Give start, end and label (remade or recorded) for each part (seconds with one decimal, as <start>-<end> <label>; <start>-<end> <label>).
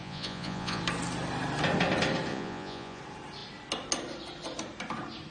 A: 0.0-0.8 remade; 0.8-2.3 recorded; 2.3-3.0 remade; 3.0-5.3 recorded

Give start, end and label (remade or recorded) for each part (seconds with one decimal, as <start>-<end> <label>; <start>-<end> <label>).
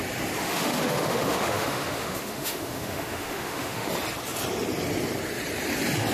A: 0.0-0.4 recorded; 0.4-3.9 remade; 3.9-6.1 recorded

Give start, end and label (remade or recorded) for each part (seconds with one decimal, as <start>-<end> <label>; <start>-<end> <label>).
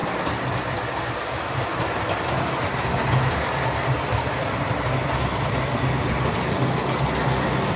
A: 0.0-7.8 recorded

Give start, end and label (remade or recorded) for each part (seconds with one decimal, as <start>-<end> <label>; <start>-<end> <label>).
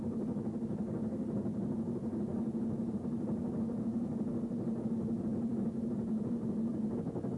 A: 0.0-7.4 recorded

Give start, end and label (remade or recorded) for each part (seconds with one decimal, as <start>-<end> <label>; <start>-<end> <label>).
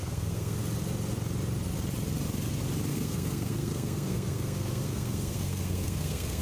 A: 0.0-0.6 remade; 0.6-2.9 recorded; 2.9-6.4 remade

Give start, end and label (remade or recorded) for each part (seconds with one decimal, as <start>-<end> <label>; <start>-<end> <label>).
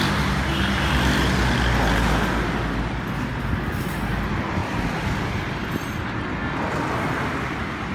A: 0.0-7.9 recorded